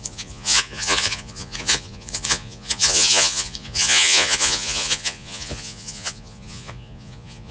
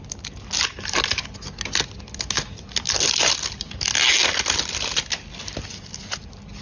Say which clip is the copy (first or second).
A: first